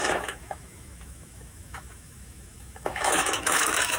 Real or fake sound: fake